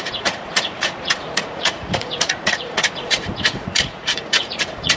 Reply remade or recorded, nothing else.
remade